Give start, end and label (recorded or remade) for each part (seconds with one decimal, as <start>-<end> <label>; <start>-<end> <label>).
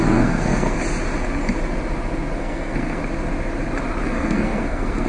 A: 0.0-0.8 remade; 0.8-2.4 recorded; 2.4-3.0 remade; 3.0-4.0 recorded; 4.0-5.1 remade